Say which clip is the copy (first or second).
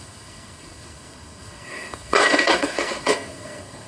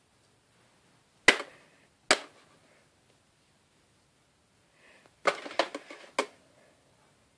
first